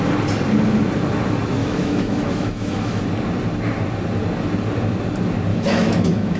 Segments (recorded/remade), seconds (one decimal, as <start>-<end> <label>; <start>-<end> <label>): 0.0-1.6 recorded; 1.6-3.0 remade; 3.0-5.5 recorded; 5.5-6.4 remade